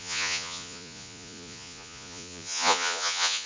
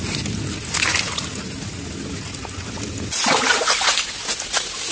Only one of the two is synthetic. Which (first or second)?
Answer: first